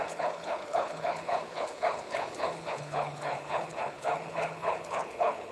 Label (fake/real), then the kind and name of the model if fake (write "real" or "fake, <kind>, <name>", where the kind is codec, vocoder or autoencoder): fake, codec, HILCodec